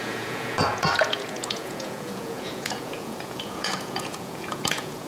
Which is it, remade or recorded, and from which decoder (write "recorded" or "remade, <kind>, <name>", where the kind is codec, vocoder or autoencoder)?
remade, vocoder, Vocos